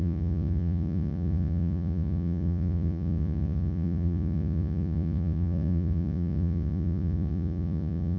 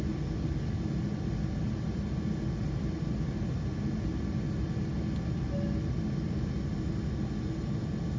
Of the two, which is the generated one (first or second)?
first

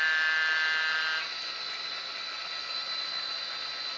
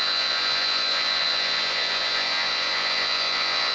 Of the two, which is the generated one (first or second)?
second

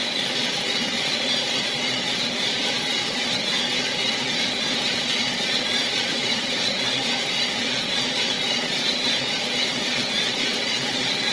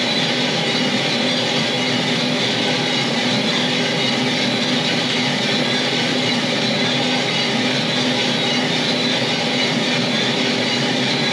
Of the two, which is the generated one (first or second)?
first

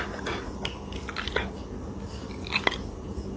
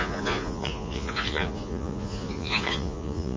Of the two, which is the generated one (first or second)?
second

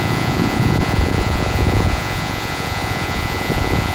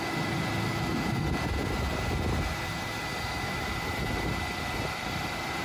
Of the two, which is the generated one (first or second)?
first